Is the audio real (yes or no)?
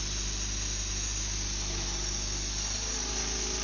yes